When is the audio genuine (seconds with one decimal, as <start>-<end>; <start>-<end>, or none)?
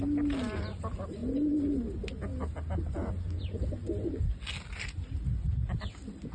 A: 0.0-6.3